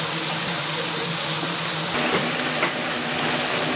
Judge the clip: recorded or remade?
recorded